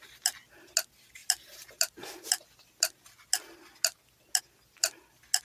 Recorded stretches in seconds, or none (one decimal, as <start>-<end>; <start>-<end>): 0.0-5.4